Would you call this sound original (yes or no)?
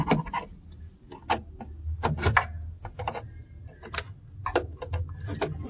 yes